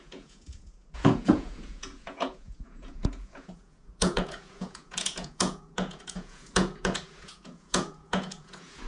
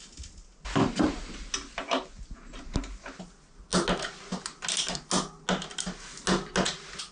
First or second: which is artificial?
first